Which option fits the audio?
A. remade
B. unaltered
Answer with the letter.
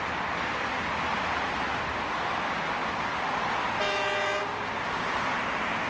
B